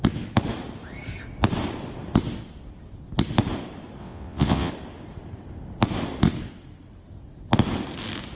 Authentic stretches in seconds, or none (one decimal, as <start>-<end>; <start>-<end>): 0.0-4.0; 4.7-8.4